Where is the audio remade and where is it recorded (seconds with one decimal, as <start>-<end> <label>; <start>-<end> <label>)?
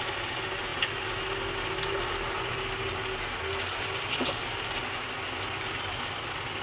0.0-6.6 recorded